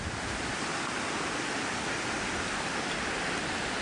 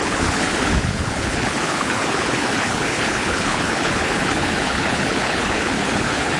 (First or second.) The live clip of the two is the first